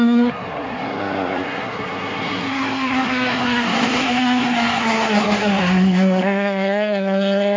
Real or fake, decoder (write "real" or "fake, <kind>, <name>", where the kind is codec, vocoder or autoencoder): fake, codec, SNAC